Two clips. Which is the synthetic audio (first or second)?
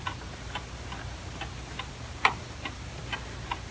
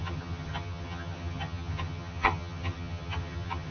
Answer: second